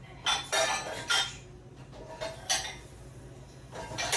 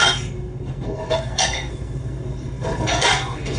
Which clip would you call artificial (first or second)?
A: second